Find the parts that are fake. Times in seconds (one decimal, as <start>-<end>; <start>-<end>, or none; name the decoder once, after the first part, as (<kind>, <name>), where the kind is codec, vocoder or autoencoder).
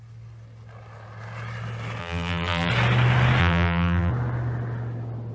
2.0-2.7 (vocoder, BigVGAN v2); 3.4-4.1